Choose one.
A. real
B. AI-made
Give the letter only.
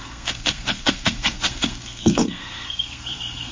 B